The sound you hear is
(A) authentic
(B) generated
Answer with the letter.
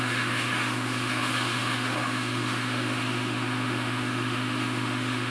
B